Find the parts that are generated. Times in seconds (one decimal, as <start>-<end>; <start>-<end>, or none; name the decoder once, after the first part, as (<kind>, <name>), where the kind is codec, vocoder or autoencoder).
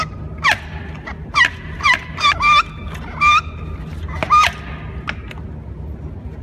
none